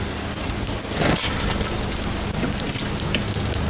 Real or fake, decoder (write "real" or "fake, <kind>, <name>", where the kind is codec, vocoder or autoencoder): real